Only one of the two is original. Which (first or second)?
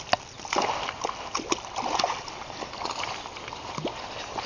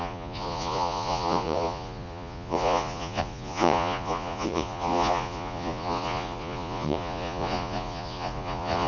first